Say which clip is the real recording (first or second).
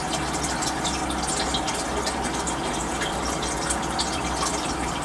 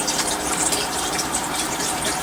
first